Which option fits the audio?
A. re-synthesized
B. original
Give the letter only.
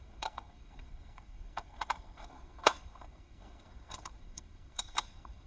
A